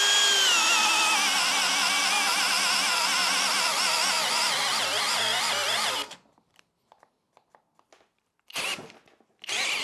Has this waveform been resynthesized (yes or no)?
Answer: no